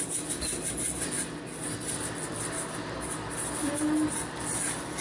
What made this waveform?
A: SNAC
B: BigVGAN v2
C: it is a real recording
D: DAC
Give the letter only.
C